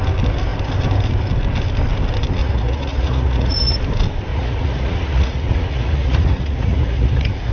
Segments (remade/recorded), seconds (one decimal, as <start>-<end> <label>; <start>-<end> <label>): 0.0-2.4 recorded; 2.4-3.8 remade; 3.8-4.3 recorded; 4.3-7.5 remade